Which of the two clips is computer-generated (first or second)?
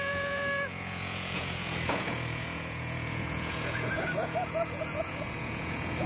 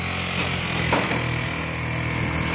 first